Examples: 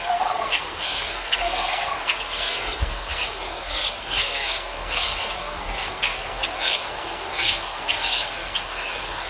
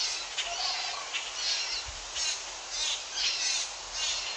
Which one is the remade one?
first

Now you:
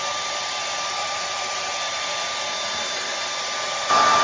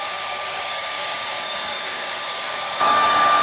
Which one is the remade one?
second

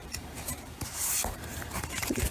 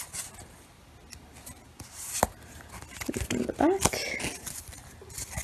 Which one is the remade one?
first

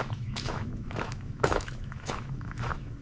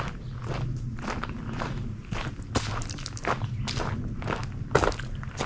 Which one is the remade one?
first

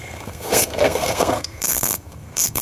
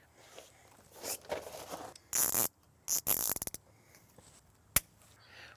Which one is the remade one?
first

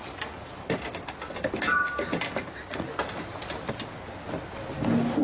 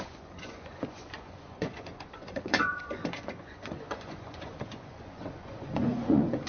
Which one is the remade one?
second